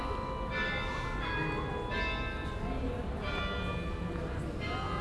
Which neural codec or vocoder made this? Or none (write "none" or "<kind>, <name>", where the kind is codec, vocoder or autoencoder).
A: none